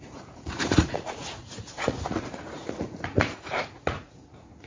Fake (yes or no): yes